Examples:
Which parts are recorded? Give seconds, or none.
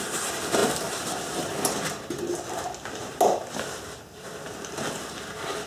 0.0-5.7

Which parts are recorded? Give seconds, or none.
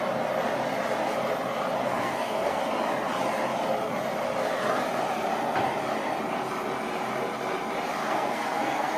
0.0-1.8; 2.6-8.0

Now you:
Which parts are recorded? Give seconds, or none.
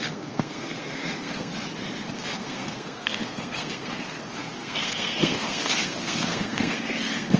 1.5-2.1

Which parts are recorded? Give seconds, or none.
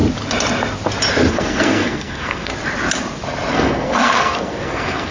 0.0-1.3; 2.5-3.5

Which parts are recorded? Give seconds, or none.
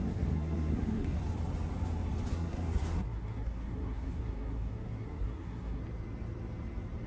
1.2-2.3; 5.8-7.1